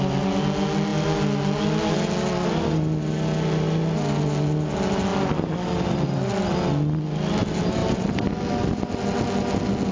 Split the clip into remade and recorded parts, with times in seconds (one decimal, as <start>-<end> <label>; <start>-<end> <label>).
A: 0.0-9.9 recorded